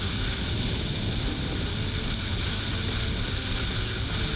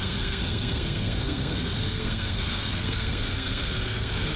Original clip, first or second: first